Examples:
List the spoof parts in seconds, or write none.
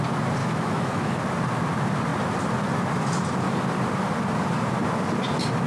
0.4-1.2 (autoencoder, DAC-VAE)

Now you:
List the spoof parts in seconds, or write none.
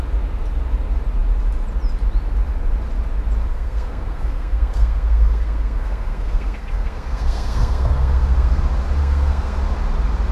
3.5-8.6 (codec, SNAC); 9.0-9.6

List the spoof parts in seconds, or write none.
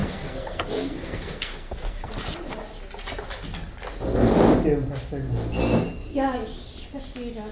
0.0-2.1 (codec, SNAC)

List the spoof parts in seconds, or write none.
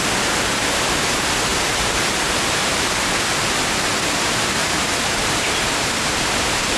1.5-3.0 (vocoder, BigVGAN v2); 4.6-6.8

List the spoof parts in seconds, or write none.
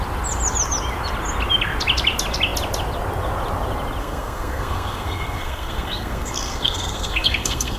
4.0-7.8 (codec, SNAC)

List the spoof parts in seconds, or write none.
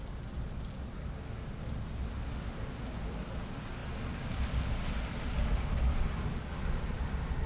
none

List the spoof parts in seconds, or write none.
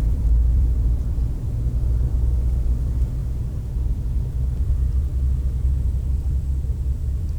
0.0-1.2 (vocoder, BigVGAN v2); 2.1-7.4